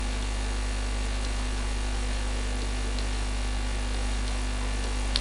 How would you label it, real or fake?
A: real